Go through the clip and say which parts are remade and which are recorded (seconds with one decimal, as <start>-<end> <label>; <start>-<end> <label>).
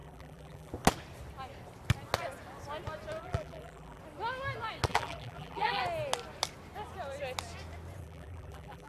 0.0-0.7 remade; 0.7-3.2 recorded; 3.2-4.0 remade; 4.0-4.9 recorded; 4.9-5.8 remade; 5.8-8.0 recorded; 8.0-8.9 remade